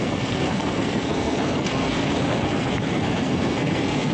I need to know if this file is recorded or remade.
remade